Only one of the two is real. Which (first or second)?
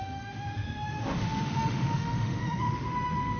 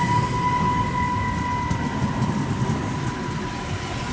second